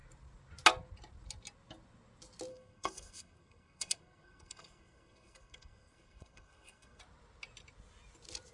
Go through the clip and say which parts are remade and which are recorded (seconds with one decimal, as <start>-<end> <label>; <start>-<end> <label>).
0.0-2.5 recorded; 2.5-7.0 remade; 7.0-8.5 recorded